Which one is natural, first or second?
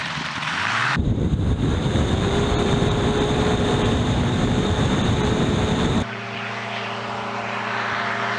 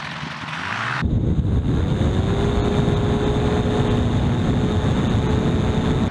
second